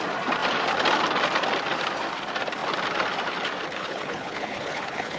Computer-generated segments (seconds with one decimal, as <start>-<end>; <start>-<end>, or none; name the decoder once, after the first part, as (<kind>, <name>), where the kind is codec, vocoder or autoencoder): 3.8-5.2 (codec, HILCodec)